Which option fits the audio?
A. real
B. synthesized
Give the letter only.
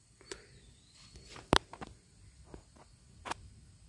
A